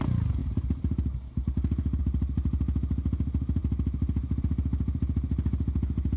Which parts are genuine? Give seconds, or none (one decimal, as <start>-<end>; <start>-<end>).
0.0-6.2